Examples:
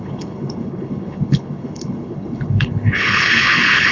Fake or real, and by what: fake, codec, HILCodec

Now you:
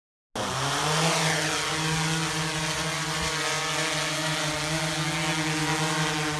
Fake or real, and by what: real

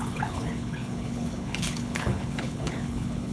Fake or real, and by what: fake, codec, HILCodec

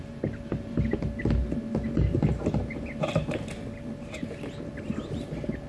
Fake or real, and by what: real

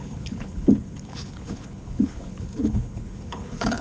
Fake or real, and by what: fake, codec, HILCodec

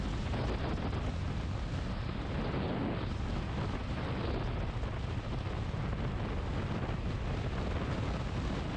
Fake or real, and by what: real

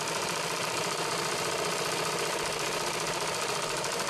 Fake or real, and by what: real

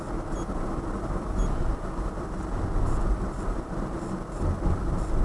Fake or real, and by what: real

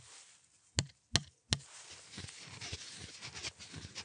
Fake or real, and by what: real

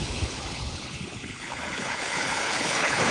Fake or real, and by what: fake, codec, HILCodec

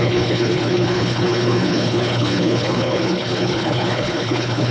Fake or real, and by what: fake, codec, HILCodec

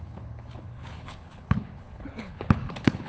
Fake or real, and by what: fake, codec, HILCodec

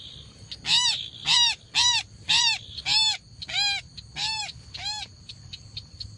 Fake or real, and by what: real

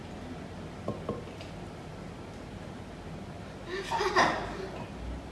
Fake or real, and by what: real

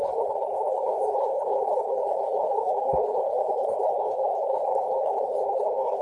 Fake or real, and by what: fake, codec, HILCodec